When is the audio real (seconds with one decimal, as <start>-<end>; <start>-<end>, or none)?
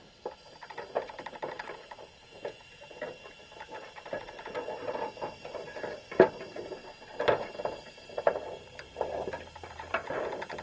6.8-7.4; 10.0-10.6